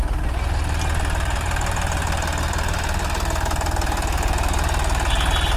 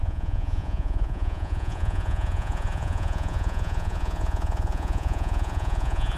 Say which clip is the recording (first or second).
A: first